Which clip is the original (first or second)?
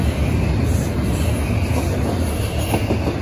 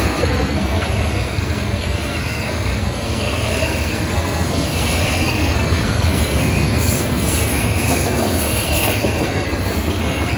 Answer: first